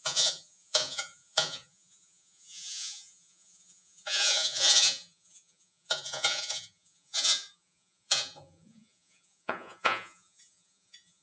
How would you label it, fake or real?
fake